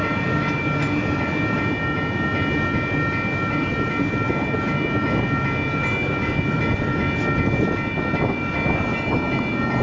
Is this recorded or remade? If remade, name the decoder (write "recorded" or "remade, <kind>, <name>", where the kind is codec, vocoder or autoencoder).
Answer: recorded